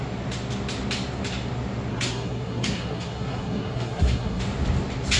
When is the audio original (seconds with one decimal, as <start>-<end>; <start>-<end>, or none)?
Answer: 0.0-1.9; 4.4-5.2